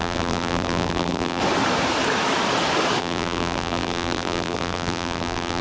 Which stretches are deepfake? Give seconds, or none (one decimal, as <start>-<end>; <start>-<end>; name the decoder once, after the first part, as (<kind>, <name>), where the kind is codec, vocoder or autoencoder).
0.0-1.4 (vocoder, BigVGAN v2); 3.0-5.6